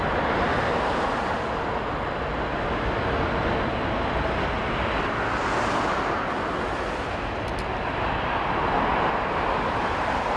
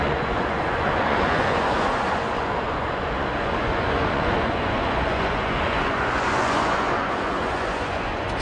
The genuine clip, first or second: first